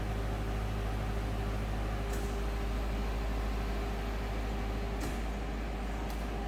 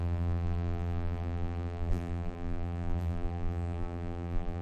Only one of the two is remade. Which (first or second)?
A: second